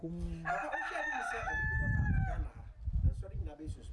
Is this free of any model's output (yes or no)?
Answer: yes